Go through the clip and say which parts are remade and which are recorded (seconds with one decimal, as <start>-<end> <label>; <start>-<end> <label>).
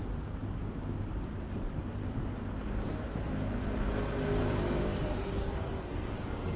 0.0-5.4 recorded; 5.4-6.1 remade; 6.1-6.6 recorded